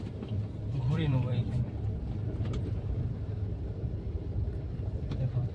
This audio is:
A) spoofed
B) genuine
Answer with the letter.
A